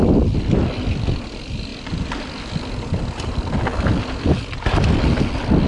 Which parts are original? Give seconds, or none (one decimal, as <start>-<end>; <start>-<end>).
0.0-5.7